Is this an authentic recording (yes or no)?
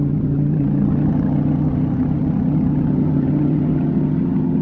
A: no